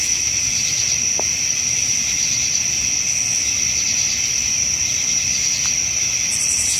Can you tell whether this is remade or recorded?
recorded